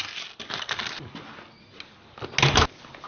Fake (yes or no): no